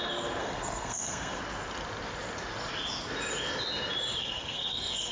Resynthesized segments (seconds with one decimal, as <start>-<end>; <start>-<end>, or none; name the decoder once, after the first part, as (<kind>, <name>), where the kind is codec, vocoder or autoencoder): 0.4-1.4 (codec, SNAC); 4.2-5.1